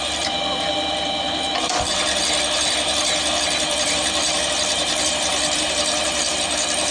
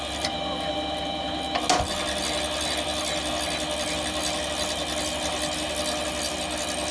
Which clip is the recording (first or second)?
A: second